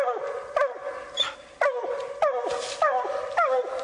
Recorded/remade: recorded